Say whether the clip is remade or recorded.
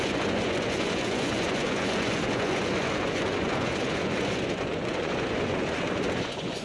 remade